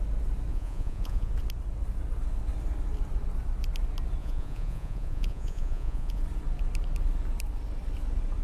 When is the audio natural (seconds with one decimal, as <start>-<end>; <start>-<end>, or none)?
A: 0.0-0.5; 1.3-4.2; 6.2-8.4